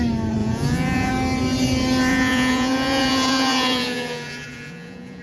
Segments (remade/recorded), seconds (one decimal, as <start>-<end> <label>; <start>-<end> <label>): 0.0-0.4 recorded; 0.4-1.1 remade; 1.1-2.1 recorded; 2.1-5.2 remade